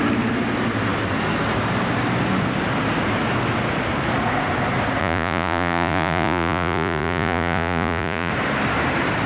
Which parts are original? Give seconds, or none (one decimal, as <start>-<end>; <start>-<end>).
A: 0.0-5.0; 8.3-9.3